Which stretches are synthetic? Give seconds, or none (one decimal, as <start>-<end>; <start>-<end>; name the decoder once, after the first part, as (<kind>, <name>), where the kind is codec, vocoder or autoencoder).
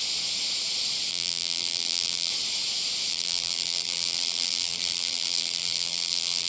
1.1-2.3 (vocoder, BigVGAN v2); 3.1-6.5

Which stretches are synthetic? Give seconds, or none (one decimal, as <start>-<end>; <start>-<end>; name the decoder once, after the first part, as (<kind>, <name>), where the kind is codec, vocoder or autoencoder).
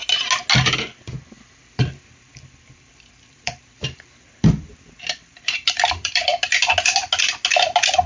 1.6-6.3 (vocoder, BigVGAN v2)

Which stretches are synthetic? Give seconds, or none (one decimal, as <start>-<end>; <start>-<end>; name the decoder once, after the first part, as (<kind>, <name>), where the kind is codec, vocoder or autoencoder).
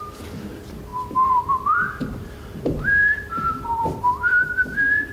0.9-4.0 (vocoder, BigVGAN v2)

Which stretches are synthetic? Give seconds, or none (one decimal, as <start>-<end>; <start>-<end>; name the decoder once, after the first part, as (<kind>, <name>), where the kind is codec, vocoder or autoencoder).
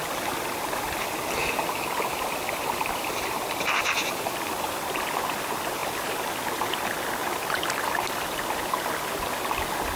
1.4-3.7 (vocoder, BigVGAN v2); 5.8-6.3; 7.2-7.9